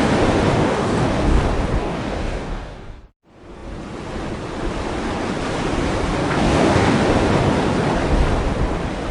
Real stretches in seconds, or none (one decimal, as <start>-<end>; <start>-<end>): 0.0-0.6; 1.4-1.8; 3.0-6.2; 7.0-9.1